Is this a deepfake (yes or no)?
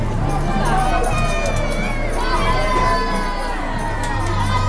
no